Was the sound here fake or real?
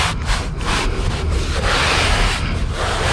real